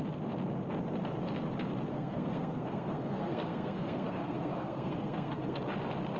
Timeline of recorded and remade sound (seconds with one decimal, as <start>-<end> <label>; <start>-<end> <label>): 0.0-1.9 recorded; 1.9-5.6 remade; 5.6-6.2 recorded